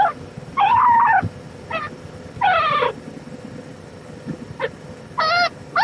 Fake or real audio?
real